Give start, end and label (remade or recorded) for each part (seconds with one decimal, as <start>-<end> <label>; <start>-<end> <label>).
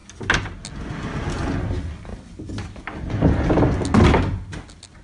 0.0-5.0 recorded